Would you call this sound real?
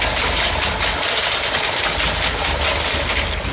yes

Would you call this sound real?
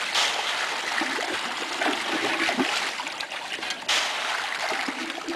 yes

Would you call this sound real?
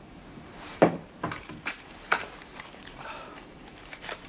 no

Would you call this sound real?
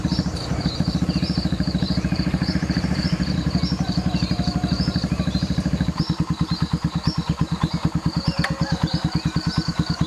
no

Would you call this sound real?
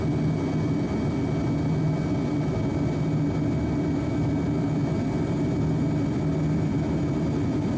yes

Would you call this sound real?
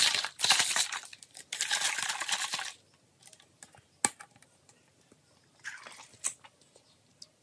yes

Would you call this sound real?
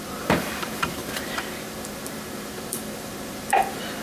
no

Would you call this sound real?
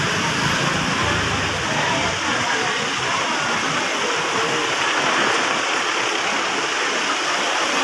yes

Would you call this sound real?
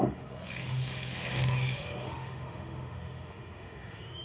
no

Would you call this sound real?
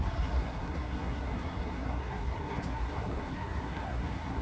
no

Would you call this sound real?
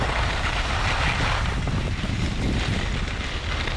yes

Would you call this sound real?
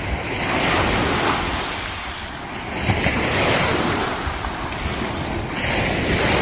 yes